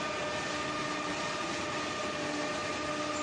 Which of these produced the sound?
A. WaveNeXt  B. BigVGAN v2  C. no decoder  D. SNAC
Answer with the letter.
C